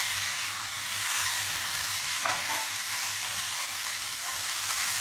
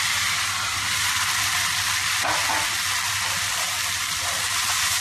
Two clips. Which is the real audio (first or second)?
second